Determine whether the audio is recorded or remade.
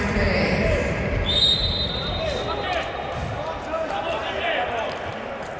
recorded